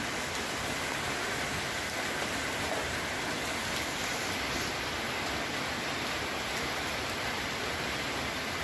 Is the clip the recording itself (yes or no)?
yes